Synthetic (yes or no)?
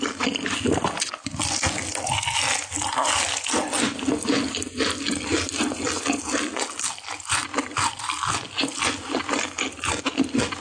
no